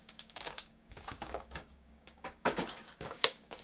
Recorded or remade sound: remade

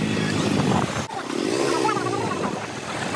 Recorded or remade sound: recorded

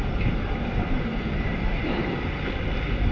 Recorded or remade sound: recorded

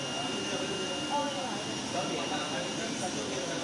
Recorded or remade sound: recorded